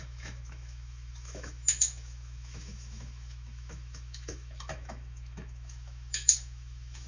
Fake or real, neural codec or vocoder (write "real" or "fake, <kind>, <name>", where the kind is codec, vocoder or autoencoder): fake, autoencoder, DAC-VAE